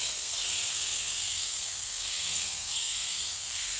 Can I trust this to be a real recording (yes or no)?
no